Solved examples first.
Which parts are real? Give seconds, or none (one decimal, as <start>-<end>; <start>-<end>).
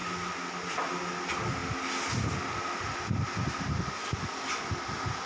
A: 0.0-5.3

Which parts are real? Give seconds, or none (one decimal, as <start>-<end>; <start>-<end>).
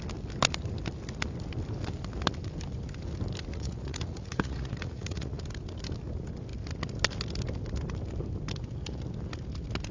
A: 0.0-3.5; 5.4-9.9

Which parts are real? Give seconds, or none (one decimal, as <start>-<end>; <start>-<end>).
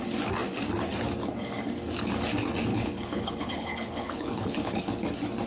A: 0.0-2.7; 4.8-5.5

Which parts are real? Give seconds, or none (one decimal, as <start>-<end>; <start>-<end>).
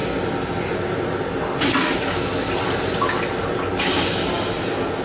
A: 0.0-5.0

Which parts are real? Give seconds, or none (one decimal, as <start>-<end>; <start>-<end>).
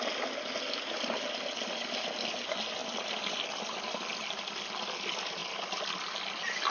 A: 0.0-6.7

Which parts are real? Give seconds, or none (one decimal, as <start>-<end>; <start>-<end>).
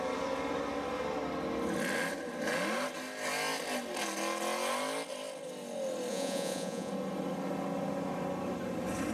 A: 0.0-6.1; 6.9-9.1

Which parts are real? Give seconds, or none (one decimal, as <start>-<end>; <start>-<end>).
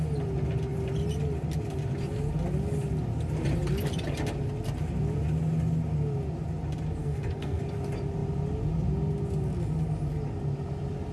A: 0.0-7.0; 7.6-11.1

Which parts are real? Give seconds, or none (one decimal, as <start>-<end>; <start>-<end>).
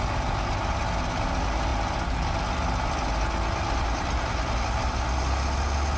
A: 0.0-6.0